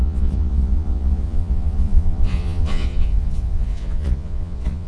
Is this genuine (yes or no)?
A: no